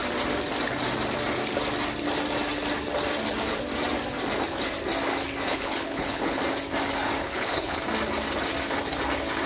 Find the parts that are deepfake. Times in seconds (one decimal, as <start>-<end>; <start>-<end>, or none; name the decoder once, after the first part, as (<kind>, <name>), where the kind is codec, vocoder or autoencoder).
5.5-6.4 (codec, HILCodec); 7.2-7.8